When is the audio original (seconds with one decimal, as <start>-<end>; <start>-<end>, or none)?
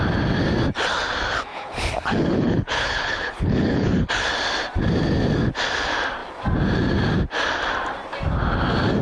0.0-1.5; 4.1-9.0